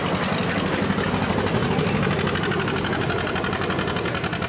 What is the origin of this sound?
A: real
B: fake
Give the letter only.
A